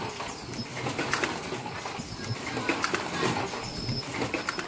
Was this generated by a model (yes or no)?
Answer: no